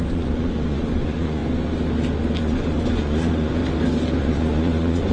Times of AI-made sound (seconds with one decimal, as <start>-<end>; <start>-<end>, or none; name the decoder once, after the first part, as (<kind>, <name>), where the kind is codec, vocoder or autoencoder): 0.0-1.4 (vocoder, Vocos); 2.4-3.6; 4.2-5.1